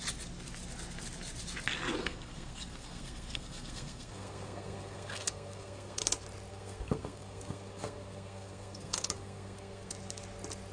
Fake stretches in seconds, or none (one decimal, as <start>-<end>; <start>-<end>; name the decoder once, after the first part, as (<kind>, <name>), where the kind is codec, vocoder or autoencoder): 2.0-6.0 (codec, SNAC); 6.5-9.9

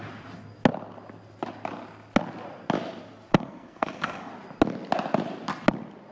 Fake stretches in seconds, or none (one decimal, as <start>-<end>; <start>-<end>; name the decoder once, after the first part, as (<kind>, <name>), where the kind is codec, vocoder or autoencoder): 3.3-4.3 (codec, SNAC)

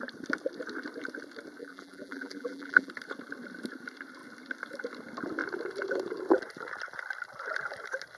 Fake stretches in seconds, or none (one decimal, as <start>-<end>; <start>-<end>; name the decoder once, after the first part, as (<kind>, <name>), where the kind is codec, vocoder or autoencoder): 1.6-2.9 (vocoder, BigVGAN v2)